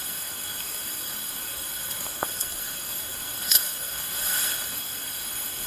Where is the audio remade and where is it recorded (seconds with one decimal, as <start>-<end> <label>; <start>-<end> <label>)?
0.0-5.7 remade